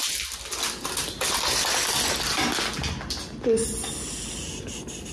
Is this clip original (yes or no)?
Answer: yes